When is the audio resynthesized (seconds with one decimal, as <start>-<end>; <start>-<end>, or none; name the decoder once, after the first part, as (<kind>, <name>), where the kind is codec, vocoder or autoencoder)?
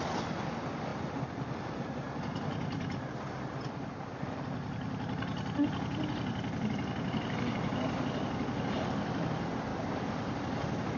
none